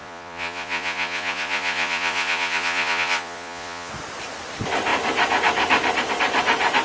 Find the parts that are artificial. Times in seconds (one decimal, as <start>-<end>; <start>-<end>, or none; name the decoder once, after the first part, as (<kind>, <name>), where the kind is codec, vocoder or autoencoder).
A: 0.0-3.9 (vocoder, Vocos)